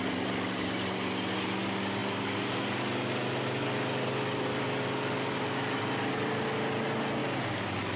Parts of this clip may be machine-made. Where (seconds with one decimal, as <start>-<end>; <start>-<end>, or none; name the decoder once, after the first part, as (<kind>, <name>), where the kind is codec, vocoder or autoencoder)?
none